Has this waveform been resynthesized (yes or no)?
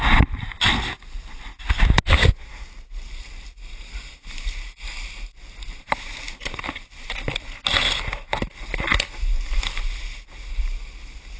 no